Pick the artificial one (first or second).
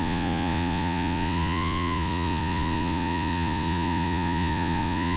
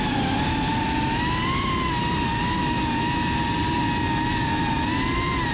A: first